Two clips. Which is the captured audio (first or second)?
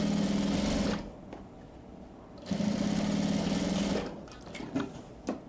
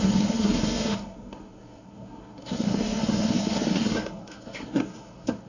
first